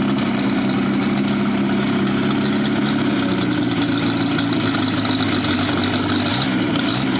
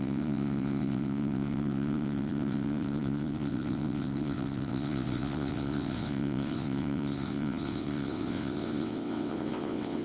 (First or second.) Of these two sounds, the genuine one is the first